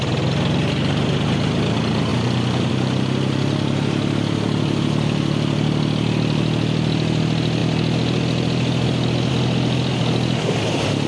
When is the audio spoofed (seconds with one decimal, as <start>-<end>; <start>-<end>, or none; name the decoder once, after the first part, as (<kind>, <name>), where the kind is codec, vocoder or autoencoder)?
2.1-2.7 (vocoder, BigVGAN v2)